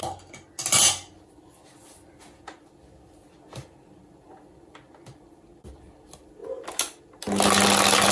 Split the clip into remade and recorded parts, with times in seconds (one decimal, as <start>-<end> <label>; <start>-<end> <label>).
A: 0.0-8.1 recorded